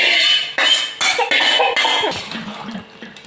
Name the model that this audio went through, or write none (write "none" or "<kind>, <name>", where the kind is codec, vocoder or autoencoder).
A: none